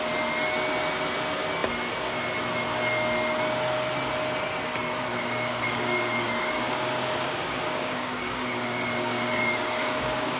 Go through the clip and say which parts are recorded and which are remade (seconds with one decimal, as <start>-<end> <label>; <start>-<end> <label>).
0.0-5.1 recorded; 5.1-10.4 remade